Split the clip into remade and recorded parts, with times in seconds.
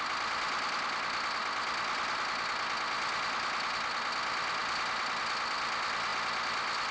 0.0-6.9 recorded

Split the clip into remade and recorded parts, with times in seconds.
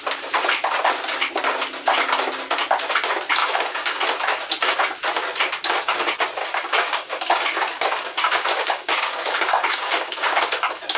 0.0-3.4 recorded; 3.4-4.0 remade; 4.0-6.4 recorded; 6.4-10.4 remade; 10.4-11.0 recorded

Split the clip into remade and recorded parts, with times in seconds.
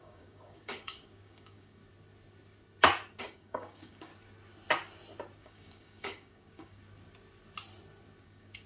0.0-1.8 remade; 1.8-3.2 recorded; 3.2-4.1 remade; 4.1-5.4 recorded; 5.4-6.8 remade; 6.8-8.2 recorded; 8.2-8.7 remade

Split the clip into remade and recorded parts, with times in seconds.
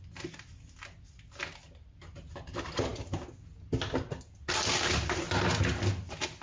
0.0-6.4 recorded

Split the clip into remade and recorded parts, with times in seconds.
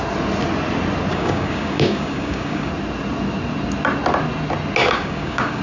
0.0-1.1 recorded; 1.1-2.7 remade; 2.7-4.8 recorded; 4.8-5.6 remade